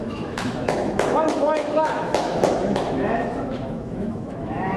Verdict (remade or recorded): remade